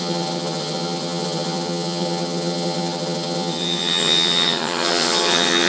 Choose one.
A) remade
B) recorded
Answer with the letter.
A